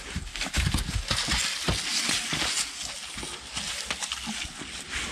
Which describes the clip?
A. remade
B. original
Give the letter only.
B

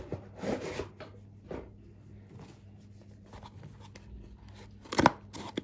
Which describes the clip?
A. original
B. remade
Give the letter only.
A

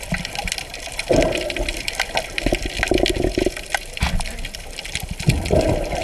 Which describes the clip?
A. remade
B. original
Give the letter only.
B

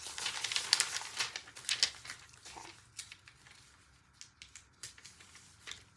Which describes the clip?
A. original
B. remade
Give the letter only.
A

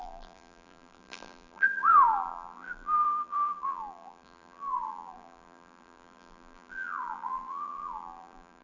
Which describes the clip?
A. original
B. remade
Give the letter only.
B